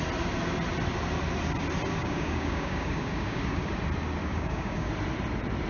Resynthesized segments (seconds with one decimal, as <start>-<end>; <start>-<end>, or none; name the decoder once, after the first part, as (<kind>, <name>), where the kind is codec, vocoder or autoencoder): 2.0-3.7 (codec, DAC); 4.2-4.9